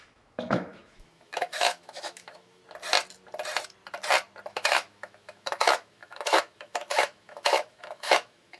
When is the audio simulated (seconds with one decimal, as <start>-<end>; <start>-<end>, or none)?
0.0-2.6; 4.5-8.6